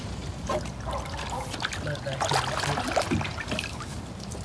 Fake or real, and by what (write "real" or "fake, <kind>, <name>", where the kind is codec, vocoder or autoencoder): real